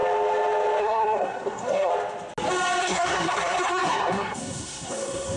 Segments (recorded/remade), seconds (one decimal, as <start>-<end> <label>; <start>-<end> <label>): 0.0-0.8 recorded; 0.8-1.9 remade; 1.9-2.8 recorded; 2.8-5.4 remade